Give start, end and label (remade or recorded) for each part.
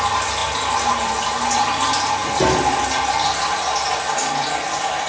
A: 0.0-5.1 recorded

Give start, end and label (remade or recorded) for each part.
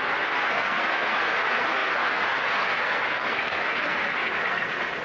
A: 0.0-5.0 remade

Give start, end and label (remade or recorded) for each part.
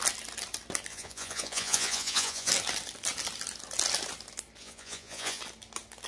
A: 0.0-0.9 recorded; 0.9-2.5 remade; 2.5-4.6 recorded; 4.6-5.4 remade; 5.4-6.1 recorded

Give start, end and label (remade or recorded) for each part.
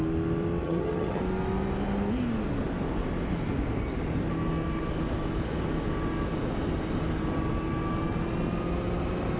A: 0.0-0.6 recorded; 0.6-1.2 remade; 1.2-9.4 recorded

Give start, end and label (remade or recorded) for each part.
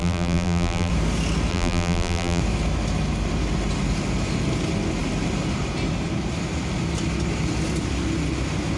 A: 0.0-0.9 remade; 0.9-1.5 recorded; 1.5-2.4 remade; 2.4-8.8 recorded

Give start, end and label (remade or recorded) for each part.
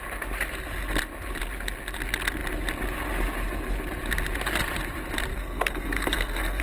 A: 0.0-5.3 recorded; 5.3-6.6 remade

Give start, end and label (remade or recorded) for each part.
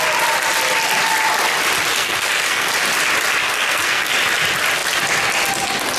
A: 0.0-1.9 recorded; 1.9-2.7 remade; 2.7-3.4 recorded; 3.4-4.1 remade; 4.1-6.0 recorded